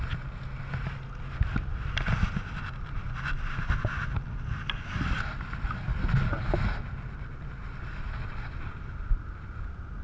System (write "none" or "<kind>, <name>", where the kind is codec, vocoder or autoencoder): none